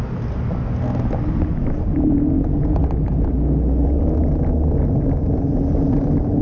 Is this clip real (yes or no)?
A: yes